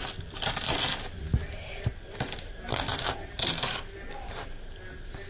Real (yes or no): yes